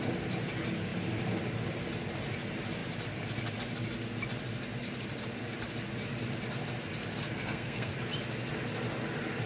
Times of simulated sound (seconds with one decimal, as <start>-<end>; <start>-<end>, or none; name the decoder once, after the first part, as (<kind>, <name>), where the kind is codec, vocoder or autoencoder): 7.3-7.9 (codec, SNAC)